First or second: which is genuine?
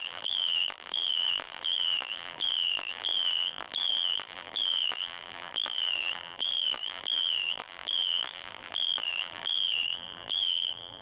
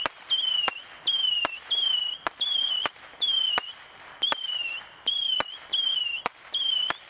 second